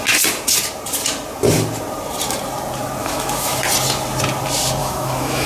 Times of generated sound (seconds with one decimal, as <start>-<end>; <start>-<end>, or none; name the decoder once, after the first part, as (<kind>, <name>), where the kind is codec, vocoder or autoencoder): 3.0-3.6 (autoencoder, DAC-VAE); 4.8-5.5